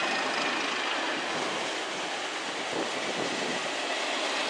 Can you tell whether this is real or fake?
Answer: real